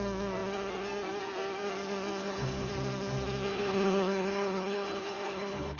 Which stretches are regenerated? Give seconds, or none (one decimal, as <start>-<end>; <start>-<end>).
2.2-2.7; 3.5-5.8